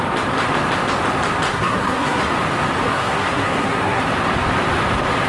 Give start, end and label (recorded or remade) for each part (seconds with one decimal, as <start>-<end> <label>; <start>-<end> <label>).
0.0-1.5 recorded; 1.5-2.3 remade; 2.3-2.9 recorded; 2.9-4.0 remade; 4.0-5.3 recorded